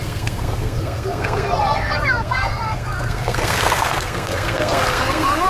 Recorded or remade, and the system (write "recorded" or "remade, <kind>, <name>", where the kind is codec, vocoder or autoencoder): remade, codec, SNAC